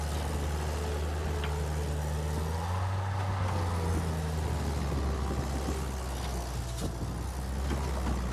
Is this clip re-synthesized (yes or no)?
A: no